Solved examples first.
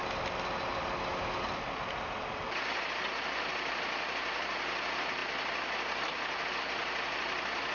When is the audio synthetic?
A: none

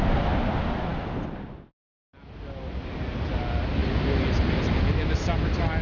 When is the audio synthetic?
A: none

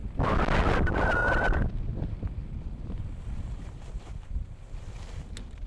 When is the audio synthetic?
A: none

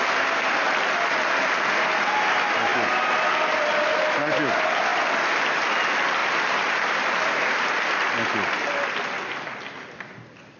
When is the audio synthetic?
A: 6.2-7.7 (vocoder, BigVGAN v2)

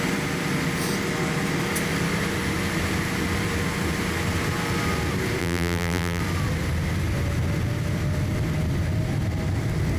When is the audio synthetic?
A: 5.4-6.2 (vocoder, BigVGAN v2)

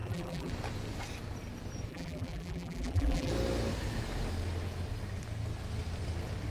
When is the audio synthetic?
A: 0.0-0.5 (vocoder, BigVGAN v2); 1.9-3.3

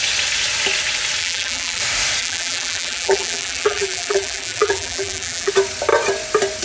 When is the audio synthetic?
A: 1.2-1.8 (vocoder, BigVGAN v2); 2.2-5.5